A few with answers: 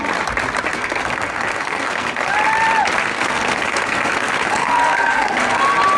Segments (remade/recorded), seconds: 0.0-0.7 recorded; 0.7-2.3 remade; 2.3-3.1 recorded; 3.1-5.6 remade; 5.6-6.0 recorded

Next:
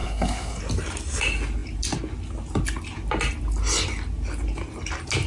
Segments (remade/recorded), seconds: 0.0-0.6 remade; 0.6-5.3 recorded